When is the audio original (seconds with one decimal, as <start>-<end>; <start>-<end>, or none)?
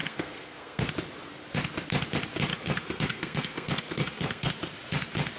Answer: 0.9-2.5; 4.5-5.4